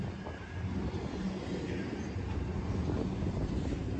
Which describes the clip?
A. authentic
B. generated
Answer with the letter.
A